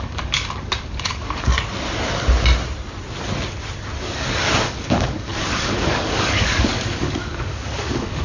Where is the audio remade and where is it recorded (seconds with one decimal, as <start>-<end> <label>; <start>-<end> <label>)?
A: 0.0-1.5 remade; 1.5-4.0 recorded; 4.0-8.2 remade